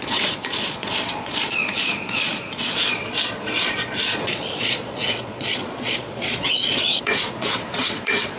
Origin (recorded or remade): remade